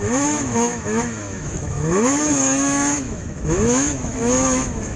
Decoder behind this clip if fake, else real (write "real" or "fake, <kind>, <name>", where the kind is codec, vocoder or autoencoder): fake, autoencoder, DAC-VAE